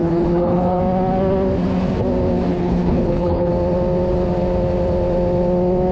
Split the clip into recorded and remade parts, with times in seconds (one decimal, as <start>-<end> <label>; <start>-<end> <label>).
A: 0.0-0.8 remade; 0.8-2.5 recorded; 2.5-3.5 remade; 3.5-5.9 recorded